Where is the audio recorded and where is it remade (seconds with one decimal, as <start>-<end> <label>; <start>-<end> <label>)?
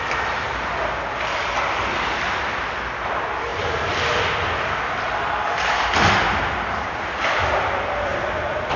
0.0-8.8 recorded